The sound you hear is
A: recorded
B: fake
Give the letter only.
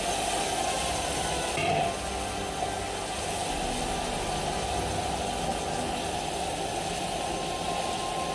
A